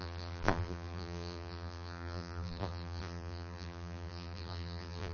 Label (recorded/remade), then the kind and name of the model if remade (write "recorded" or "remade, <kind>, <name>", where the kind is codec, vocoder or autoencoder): remade, vocoder, BigVGAN v2